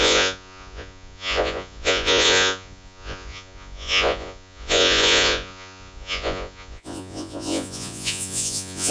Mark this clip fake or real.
fake